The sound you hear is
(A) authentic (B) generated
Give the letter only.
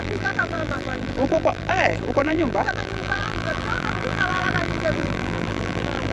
B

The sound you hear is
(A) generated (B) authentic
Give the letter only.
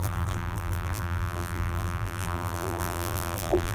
A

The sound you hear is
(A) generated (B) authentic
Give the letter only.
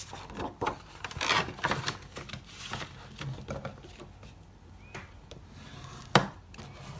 B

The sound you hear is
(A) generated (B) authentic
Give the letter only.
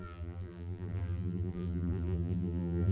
A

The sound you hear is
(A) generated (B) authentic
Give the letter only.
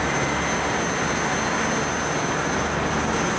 B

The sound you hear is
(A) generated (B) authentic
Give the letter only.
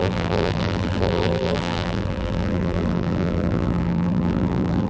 A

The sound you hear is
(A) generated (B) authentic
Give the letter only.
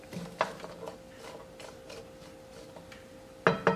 B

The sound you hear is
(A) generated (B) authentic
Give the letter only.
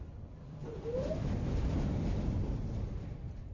A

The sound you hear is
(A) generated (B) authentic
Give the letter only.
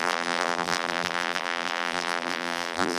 A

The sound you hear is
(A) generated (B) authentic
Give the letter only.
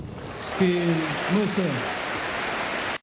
B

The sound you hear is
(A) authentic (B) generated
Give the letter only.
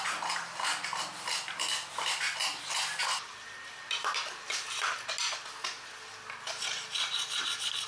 A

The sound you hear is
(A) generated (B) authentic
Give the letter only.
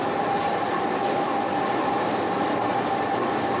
B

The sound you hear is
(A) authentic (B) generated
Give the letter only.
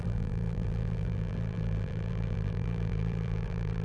B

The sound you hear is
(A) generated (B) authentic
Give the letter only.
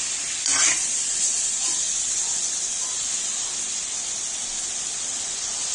A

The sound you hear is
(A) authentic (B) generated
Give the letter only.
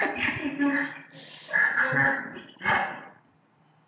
A